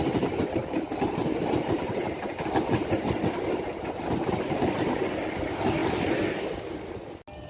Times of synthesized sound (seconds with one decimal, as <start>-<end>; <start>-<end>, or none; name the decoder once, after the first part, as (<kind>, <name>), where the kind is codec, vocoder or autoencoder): 0.6-2.3 (vocoder, BigVGAN v2)